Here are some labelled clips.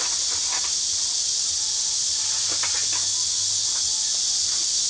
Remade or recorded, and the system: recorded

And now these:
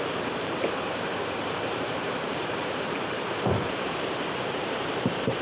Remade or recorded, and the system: remade, vocoder, BigVGAN v2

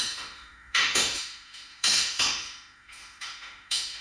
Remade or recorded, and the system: remade, autoencoder, DAC-VAE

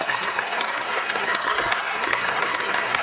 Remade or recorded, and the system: remade, codec, SNAC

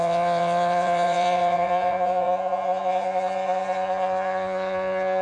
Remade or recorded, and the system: remade, vocoder, Vocos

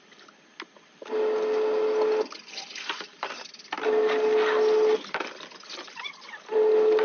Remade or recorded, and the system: recorded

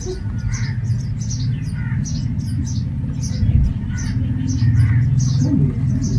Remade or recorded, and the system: recorded